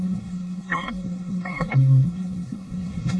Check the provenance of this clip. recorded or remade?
remade